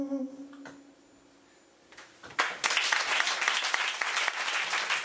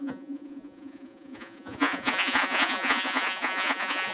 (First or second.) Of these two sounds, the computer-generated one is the second